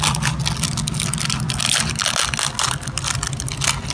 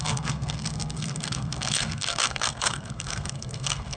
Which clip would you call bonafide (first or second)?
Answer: first